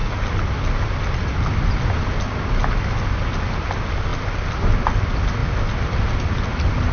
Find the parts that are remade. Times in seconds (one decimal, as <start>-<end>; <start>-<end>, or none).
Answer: none